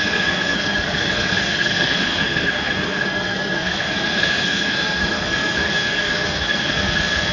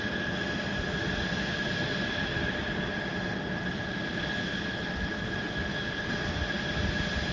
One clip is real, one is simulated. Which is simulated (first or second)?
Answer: first